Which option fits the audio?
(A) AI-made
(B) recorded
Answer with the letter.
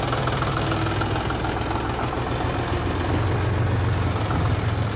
B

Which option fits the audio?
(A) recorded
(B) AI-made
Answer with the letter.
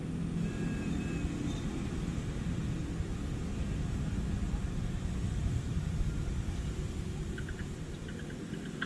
A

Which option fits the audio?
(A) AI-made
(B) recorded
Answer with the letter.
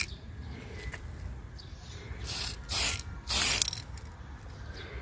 B